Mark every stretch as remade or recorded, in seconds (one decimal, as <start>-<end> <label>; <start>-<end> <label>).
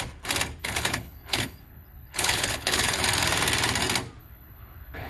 0.0-0.6 recorded; 0.6-3.0 remade; 3.0-4.2 recorded; 4.2-5.1 remade